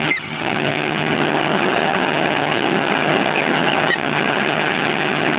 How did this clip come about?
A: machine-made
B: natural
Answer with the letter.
A